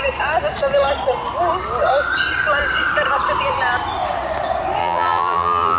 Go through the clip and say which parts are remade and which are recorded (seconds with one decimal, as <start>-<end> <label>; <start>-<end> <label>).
0.0-4.8 recorded; 4.8-5.8 remade